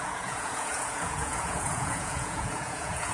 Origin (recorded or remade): remade